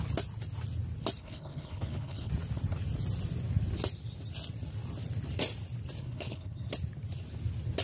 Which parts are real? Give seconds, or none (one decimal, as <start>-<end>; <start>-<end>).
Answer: 0.0-1.2; 2.3-6.0; 6.7-7.8